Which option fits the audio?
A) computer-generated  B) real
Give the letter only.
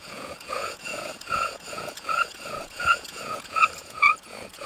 A